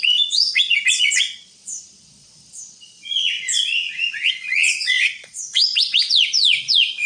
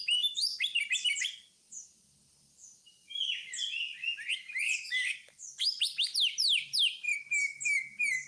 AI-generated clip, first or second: first